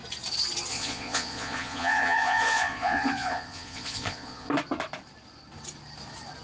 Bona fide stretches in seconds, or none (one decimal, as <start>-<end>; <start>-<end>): 0.0-0.7; 4.5-6.4